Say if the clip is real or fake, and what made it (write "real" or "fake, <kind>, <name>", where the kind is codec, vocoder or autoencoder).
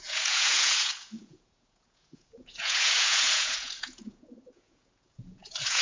fake, vocoder, Vocos